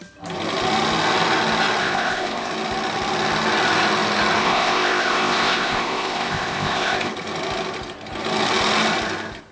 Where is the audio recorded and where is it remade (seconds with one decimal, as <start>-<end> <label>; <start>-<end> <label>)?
0.0-1.8 recorded; 1.8-2.5 remade; 2.5-4.4 recorded; 4.4-7.1 remade; 7.1-9.5 recorded